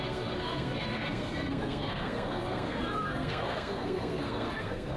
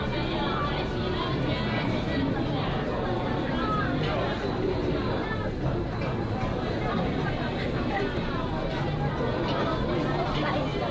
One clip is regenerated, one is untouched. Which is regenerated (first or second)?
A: first